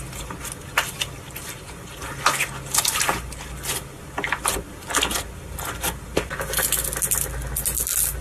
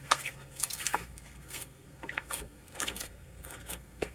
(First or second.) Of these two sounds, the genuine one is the first